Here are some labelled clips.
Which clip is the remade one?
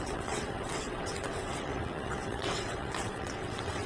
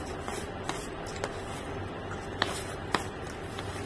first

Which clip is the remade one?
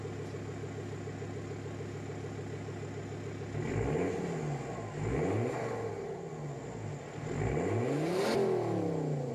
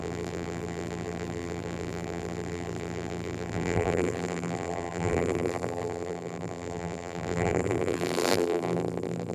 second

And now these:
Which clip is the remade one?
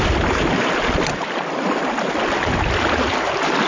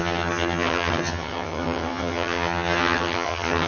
second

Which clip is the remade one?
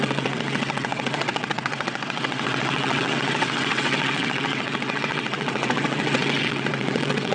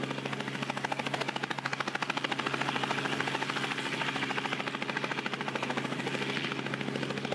first